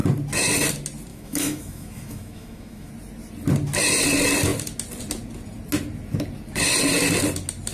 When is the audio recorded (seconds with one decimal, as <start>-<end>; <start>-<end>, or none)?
0.0-1.1; 2.9-7.7